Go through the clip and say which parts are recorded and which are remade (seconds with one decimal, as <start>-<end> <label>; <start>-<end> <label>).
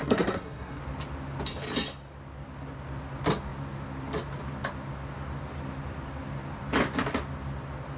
0.0-0.8 remade; 0.8-8.0 recorded